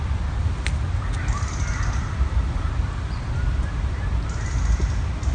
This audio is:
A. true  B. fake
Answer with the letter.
A